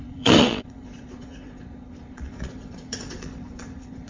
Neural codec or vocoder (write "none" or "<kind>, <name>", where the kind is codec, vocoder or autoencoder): vocoder, Vocos